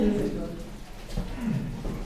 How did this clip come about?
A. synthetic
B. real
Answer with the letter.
B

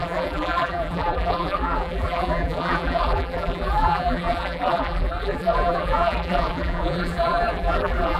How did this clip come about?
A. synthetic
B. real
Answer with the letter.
A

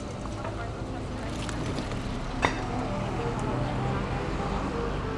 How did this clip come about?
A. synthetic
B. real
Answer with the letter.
B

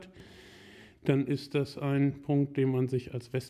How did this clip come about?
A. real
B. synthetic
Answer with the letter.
A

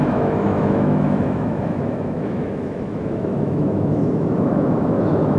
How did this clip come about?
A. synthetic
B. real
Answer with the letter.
A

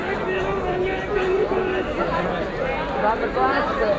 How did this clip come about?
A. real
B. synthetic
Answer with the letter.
A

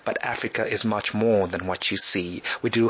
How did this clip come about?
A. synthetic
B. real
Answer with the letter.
B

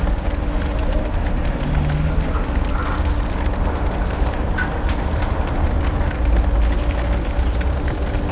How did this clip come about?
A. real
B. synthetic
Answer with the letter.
A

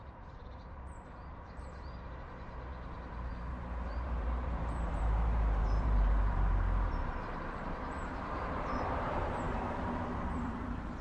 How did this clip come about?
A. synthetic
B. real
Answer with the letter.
A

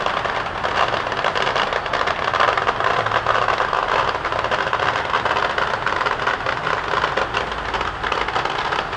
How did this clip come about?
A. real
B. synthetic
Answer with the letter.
A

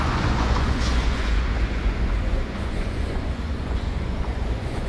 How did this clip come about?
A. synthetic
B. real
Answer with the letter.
A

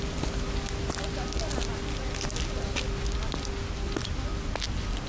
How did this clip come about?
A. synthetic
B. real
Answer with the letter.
B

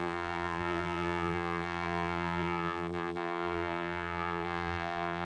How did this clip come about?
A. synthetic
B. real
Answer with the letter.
A